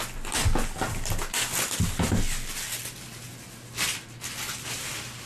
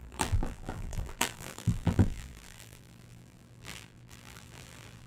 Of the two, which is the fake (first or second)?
second